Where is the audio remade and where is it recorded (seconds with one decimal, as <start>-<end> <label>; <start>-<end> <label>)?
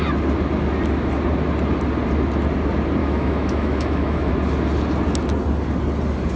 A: 0.0-3.0 recorded; 3.0-4.3 remade; 4.3-6.4 recorded